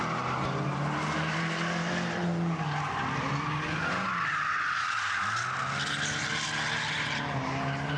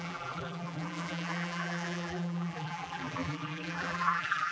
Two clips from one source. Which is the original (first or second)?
first